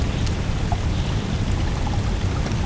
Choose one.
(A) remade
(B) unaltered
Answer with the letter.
B